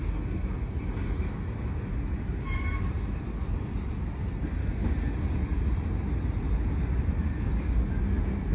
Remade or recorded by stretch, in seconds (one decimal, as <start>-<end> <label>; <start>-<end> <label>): 0.0-8.5 recorded